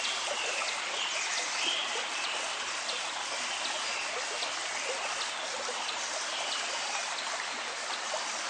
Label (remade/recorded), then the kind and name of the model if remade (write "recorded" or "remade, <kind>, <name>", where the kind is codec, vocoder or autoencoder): recorded